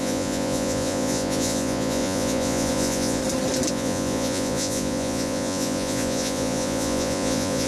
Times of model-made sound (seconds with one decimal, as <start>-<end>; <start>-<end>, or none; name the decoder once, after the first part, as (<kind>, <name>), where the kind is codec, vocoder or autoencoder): 0.0-3.2 (vocoder, Vocos); 3.7-7.7